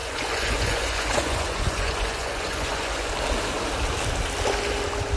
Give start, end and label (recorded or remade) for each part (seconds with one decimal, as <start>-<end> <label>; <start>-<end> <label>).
0.0-3.1 remade; 3.1-5.2 recorded